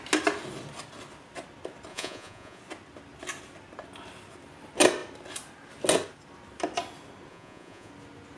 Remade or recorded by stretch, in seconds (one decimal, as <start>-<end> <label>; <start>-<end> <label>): 0.0-1.9 recorded; 1.9-2.6 remade; 2.6-7.3 recorded; 7.3-7.9 remade; 7.9-8.4 recorded

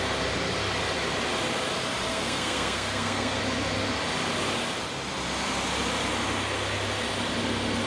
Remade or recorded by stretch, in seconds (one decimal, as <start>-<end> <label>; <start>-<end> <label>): 0.0-2.1 recorded; 2.1-3.4 remade; 3.4-7.9 recorded

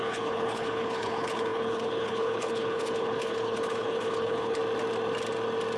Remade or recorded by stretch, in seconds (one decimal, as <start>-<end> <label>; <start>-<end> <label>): 0.0-4.6 remade; 4.6-5.8 recorded

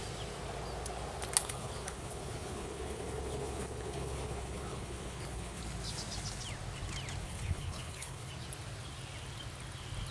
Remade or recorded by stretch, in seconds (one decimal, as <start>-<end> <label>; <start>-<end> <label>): 0.0-1.4 recorded; 1.4-5.6 remade; 5.6-7.2 recorded; 7.2-8.3 remade; 8.3-10.1 recorded

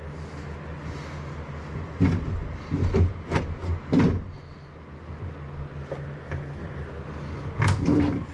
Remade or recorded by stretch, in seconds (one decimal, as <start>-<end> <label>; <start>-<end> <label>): 0.0-8.3 recorded

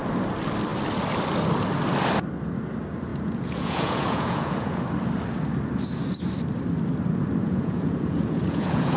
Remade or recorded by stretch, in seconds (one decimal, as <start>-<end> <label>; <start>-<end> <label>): 0.0-3.1 recorded; 3.1-4.8 remade; 4.8-7.4 recorded; 7.4-9.0 remade